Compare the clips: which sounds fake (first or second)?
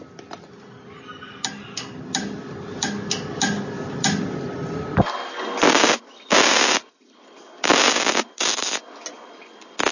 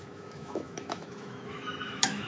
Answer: second